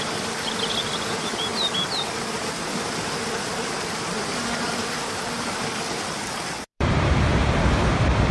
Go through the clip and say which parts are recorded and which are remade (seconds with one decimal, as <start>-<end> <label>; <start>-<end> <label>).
0.0-8.3 remade